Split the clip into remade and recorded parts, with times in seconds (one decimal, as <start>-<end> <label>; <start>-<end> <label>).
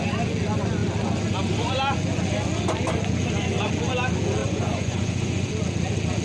0.0-4.4 recorded; 4.4-5.5 remade; 5.5-6.2 recorded